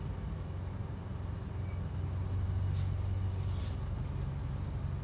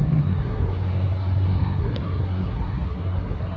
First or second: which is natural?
first